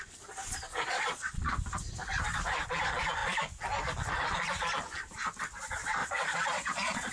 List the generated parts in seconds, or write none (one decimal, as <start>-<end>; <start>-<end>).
0.7-1.5; 6.0-7.1